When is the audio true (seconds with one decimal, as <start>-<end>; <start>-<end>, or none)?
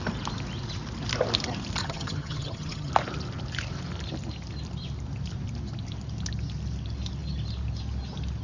0.0-1.8; 2.9-8.4